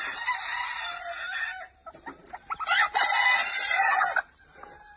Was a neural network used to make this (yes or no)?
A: no